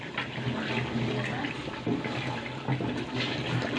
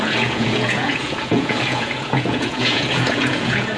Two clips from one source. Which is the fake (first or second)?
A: second